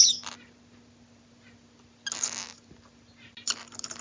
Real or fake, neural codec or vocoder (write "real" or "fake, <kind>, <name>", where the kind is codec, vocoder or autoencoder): real